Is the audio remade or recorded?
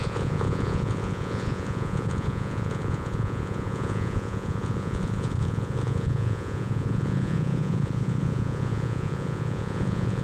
remade